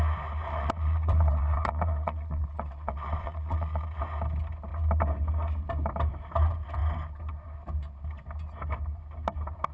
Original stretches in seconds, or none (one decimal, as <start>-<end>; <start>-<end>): 0.0-0.5; 4.0-9.7